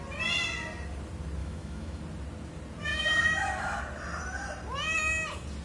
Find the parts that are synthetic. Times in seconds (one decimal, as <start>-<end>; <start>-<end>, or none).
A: 1.4-2.0; 2.9-3.8